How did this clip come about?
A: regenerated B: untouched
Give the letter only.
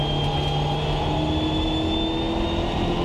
B